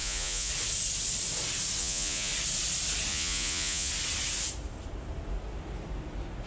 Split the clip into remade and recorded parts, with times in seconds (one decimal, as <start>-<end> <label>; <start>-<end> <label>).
0.0-0.5 remade; 0.5-1.8 recorded; 1.8-2.3 remade; 2.3-3.1 recorded; 3.1-3.9 remade; 3.9-6.5 recorded